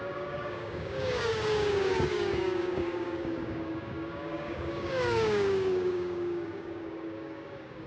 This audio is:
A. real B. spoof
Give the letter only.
B